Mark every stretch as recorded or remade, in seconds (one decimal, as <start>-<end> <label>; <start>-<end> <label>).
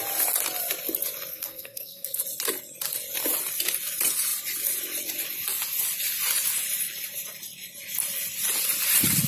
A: 0.0-1.3 recorded; 1.3-2.2 remade; 2.2-9.3 recorded